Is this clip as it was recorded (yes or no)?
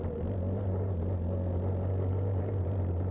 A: yes